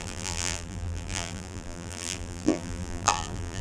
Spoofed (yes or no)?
yes